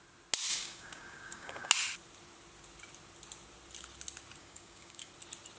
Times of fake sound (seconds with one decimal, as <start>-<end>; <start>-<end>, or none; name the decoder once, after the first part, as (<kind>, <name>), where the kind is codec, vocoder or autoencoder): 0.5-1.7 (codec, DAC); 4.4-5.1